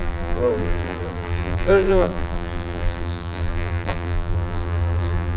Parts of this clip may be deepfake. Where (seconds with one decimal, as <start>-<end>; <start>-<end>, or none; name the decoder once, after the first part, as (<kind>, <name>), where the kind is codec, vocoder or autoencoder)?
0.0-5.4 (vocoder, BigVGAN v2)